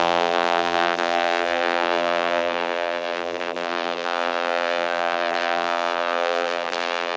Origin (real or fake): fake